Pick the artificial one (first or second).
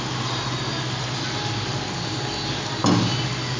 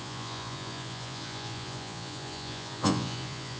second